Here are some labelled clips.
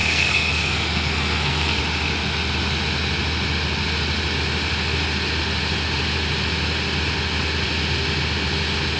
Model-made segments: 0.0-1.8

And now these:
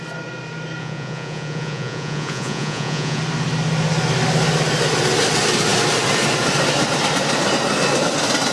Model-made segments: 0.8-3.2

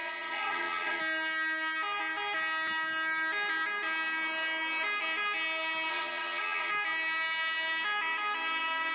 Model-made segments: 0.0-1.0; 5.9-6.7

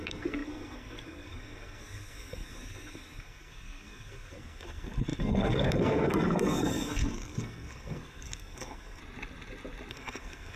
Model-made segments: 0.0-9.0; 9.9-10.6

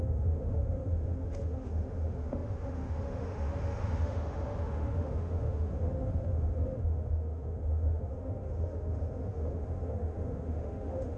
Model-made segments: 0.0-11.2

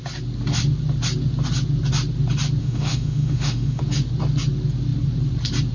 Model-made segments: 2.6-3.8